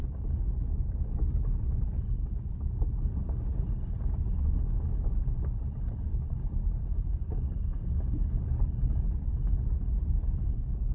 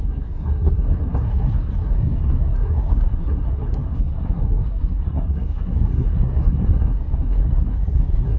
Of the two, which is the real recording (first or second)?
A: first